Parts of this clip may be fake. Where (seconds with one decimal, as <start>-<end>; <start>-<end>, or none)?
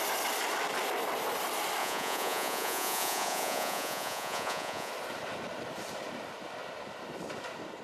1.8-4.9